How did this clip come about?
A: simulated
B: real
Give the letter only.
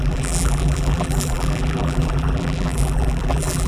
A